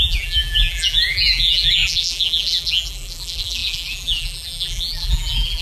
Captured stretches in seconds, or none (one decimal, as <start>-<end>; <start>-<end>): none